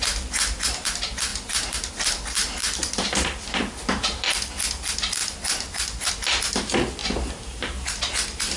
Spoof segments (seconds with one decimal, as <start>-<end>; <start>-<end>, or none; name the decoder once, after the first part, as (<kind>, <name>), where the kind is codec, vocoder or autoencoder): 2.6-4.7 (vocoder, BigVGAN v2); 5.2-6.1